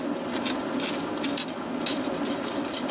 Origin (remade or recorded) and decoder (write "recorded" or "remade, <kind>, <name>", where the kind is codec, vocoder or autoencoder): recorded